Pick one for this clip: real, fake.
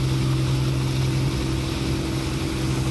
real